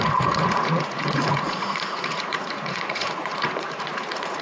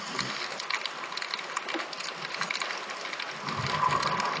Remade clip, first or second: first